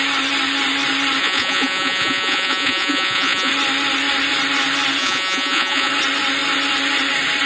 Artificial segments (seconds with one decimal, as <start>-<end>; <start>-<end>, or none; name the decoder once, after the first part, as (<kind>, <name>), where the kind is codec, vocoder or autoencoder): 1.2-3.5 (vocoder, Vocos); 5.0-5.9

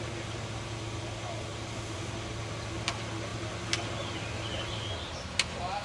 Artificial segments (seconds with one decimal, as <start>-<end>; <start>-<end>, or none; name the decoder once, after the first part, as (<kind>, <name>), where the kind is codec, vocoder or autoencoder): none

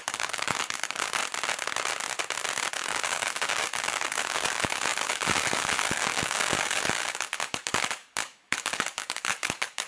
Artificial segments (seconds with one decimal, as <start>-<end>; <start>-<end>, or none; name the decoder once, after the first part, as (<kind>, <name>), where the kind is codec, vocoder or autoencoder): 0.0-1.2 (codec, DAC); 2.7-9.9

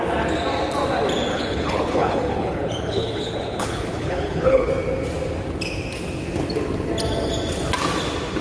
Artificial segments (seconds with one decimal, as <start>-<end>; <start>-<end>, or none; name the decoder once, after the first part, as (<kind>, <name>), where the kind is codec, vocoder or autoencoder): 1.3-4.7 (codec, HILCodec)

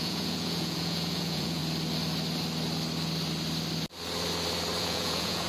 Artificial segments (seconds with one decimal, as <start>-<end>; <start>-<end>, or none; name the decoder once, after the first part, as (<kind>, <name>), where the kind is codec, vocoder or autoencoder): 0.0-1.6 (vocoder, Vocos); 4.8-5.5

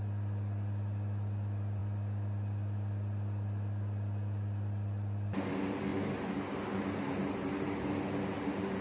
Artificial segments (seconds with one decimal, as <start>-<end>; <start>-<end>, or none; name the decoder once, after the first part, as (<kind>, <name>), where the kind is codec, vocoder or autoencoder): none